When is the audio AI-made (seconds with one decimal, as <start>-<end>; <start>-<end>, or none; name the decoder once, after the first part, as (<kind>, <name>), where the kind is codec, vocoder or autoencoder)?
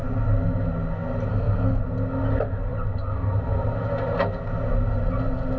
1.3-1.8 (codec, SNAC)